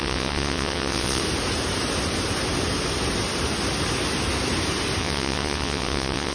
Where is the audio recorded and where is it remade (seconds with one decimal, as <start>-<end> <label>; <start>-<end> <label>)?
0.0-1.2 remade; 1.2-5.0 recorded; 5.0-6.3 remade